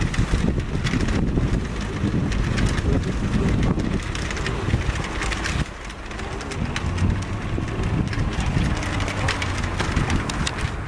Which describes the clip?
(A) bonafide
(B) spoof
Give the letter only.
A